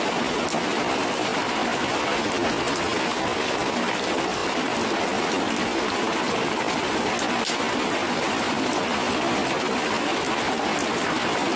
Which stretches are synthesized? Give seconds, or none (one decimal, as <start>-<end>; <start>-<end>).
none